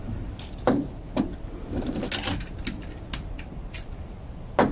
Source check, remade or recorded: recorded